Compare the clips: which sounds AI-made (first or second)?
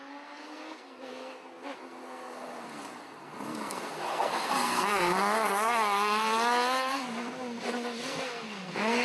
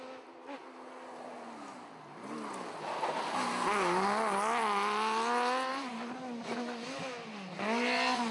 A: first